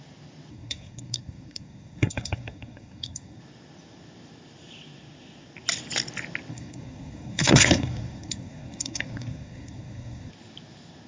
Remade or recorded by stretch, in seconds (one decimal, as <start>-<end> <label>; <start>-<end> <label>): 0.0-0.5 recorded; 0.5-3.4 remade; 3.4-6.5 recorded; 6.5-10.3 remade; 10.3-11.1 recorded